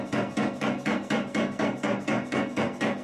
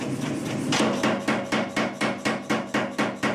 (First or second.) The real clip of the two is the second